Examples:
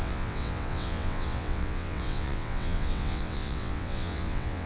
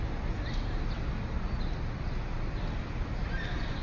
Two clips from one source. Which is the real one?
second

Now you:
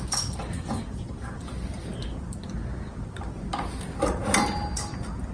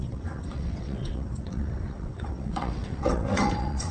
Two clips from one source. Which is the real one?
first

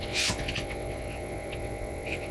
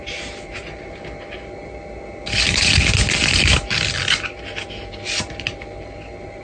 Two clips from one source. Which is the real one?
second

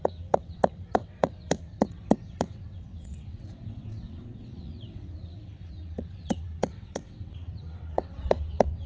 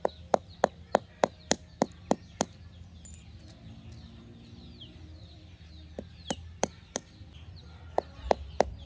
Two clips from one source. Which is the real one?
second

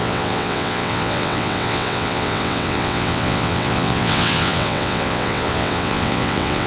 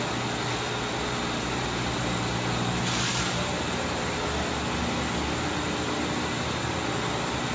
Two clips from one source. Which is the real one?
second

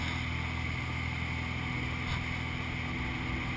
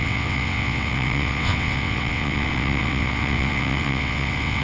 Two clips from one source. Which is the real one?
first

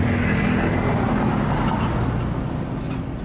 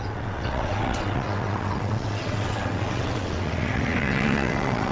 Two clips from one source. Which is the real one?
first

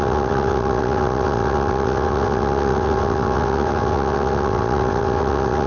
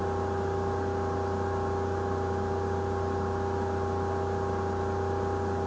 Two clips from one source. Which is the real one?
second